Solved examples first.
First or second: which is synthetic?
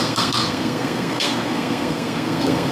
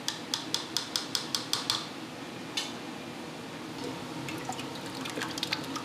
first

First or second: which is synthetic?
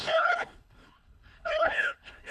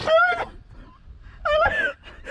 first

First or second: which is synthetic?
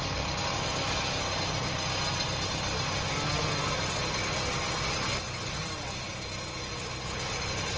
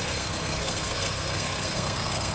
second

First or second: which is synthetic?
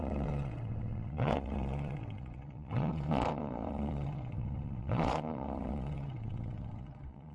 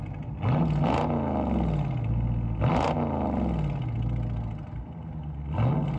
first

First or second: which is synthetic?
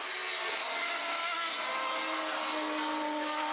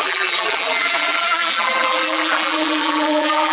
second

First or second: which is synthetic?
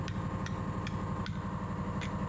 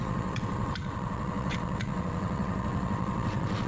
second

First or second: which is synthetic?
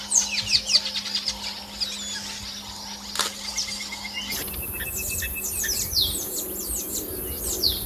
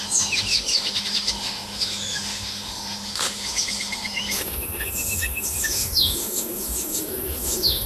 second